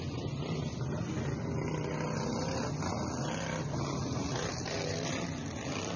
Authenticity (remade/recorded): recorded